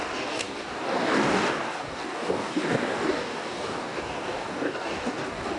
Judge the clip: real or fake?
fake